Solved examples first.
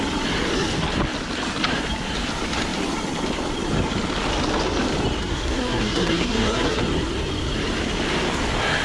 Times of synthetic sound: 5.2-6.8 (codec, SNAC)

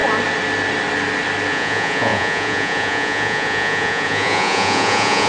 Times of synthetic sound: 1.5-5.3 (vocoder, Vocos)

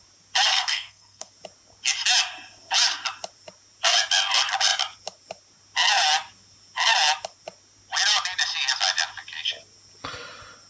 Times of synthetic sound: 0.5-1.3 (codec, SNAC)

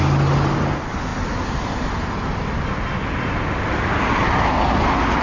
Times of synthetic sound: none

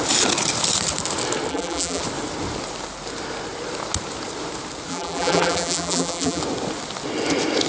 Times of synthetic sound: 1.5-2.0 (vocoder, BigVGAN v2); 4.9-6.4

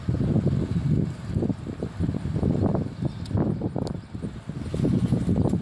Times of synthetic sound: none

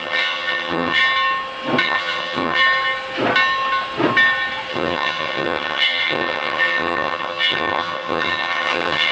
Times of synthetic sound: 0.0-1.0 (vocoder, HiFi-GAN); 1.8-2.6; 4.7-9.1